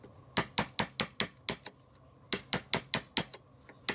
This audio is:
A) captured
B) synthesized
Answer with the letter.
A